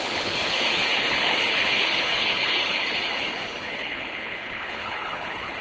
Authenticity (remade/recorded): remade